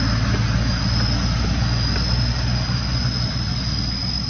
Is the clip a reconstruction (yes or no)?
no